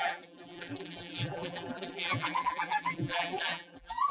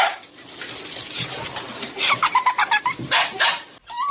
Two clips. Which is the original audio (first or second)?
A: second